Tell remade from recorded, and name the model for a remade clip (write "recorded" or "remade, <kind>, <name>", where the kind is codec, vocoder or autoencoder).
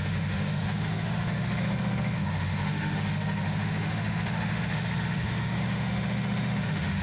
remade, autoencoder, DAC-VAE